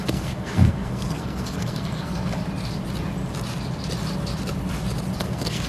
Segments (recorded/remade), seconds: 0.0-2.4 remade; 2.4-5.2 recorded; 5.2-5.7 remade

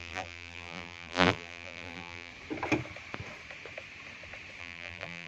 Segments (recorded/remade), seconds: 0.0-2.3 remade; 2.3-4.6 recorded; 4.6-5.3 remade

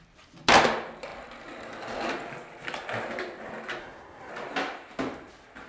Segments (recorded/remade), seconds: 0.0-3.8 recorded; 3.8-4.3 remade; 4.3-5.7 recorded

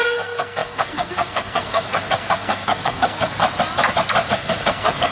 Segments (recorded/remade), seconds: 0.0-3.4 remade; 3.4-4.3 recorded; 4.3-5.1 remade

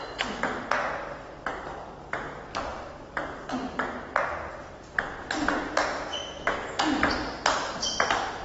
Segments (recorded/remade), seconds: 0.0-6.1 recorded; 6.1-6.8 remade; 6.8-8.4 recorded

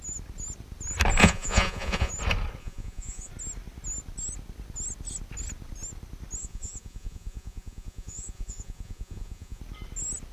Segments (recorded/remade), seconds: 0.0-1.2 recorded; 1.2-2.1 remade; 2.1-2.6 recorded; 2.6-3.3 remade; 3.3-6.4 recorded; 6.4-9.6 remade; 9.6-10.3 recorded

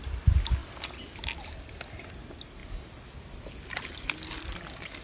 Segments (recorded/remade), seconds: 0.0-5.0 recorded